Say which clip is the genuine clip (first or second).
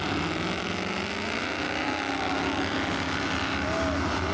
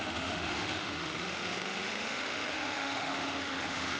first